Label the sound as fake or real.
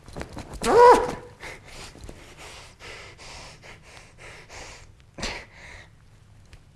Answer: real